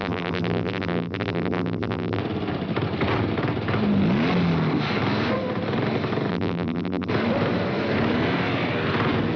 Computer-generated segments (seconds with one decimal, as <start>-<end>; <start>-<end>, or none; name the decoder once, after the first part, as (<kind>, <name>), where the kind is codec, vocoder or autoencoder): 0.0-2.2 (vocoder, BigVGAN v2); 6.3-7.1